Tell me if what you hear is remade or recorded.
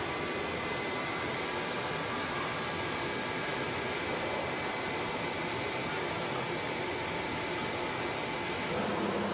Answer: recorded